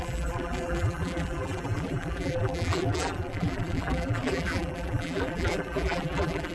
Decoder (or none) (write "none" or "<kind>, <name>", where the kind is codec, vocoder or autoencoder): vocoder, BigVGAN v2